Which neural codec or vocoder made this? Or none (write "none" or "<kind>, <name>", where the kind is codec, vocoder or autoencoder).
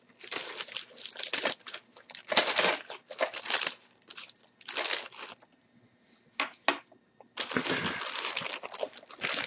none